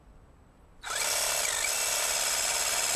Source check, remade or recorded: recorded